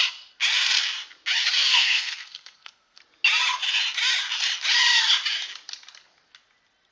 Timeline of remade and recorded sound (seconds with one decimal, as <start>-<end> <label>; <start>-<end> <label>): 0.0-1.7 recorded; 1.7-3.0 remade; 3.0-6.9 recorded